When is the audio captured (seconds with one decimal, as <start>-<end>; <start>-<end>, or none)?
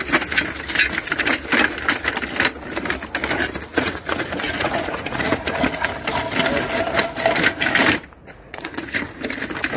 0.0-3.7; 5.9-8.2; 9.2-9.8